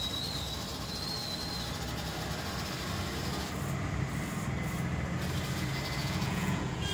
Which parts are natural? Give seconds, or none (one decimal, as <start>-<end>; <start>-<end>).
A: 0.0-6.0